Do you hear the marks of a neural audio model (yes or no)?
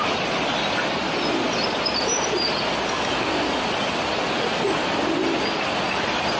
no